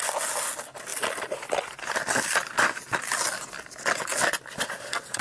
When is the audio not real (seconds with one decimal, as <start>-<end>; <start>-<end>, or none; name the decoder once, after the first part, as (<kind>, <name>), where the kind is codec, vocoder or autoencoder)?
none